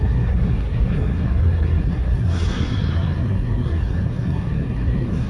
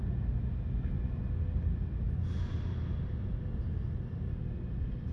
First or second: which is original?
second